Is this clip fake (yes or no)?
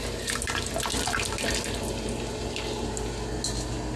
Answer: no